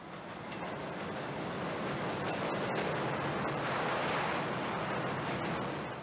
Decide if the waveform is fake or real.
real